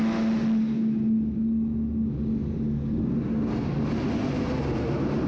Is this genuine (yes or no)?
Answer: yes